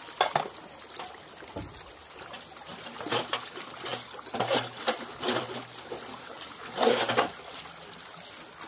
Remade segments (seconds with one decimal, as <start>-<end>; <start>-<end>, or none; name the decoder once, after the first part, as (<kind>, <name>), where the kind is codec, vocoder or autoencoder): 3.9-8.1 (vocoder, BigVGAN v2)